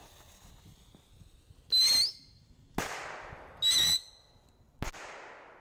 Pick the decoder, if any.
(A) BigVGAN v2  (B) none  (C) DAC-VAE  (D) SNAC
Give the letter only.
B